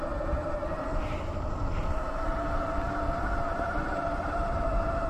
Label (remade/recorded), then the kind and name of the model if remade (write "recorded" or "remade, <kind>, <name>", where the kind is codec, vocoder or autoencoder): remade, vocoder, BigVGAN v2